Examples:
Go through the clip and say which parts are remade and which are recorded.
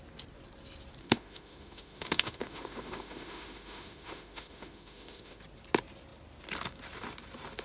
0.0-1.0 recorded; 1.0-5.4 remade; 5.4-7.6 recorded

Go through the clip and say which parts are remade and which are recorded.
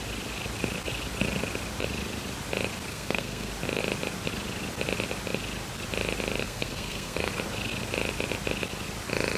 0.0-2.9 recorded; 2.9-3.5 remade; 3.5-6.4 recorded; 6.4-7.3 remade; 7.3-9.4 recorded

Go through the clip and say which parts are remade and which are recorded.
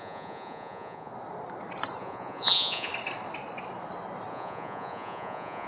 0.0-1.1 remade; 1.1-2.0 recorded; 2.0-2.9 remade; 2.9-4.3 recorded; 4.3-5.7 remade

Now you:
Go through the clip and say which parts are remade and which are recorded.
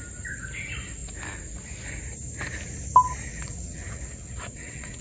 0.0-3.3 recorded; 3.3-5.0 remade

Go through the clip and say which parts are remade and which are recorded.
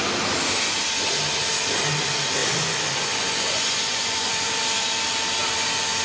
0.0-2.4 recorded; 2.4-4.5 remade; 4.5-6.0 recorded